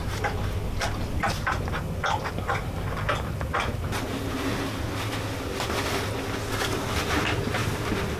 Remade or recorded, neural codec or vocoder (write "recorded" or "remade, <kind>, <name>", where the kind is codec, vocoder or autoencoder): recorded